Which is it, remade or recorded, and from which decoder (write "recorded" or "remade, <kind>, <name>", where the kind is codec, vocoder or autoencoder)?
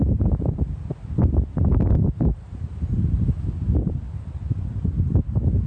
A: remade, vocoder, BigVGAN v2